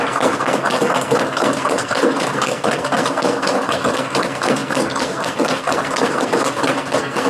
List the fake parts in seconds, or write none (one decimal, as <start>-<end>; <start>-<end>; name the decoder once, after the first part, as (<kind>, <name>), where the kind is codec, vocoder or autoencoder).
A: 0.0-7.3 (codec, SNAC)